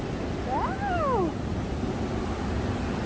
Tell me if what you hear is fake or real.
real